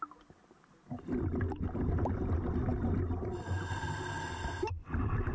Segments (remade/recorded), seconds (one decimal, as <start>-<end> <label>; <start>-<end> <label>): 0.0-5.3 recorded